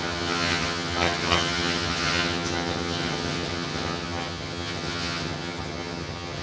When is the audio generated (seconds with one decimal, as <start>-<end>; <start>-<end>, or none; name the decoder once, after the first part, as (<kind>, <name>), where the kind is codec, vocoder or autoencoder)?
0.0-6.4 (vocoder, HiFi-GAN)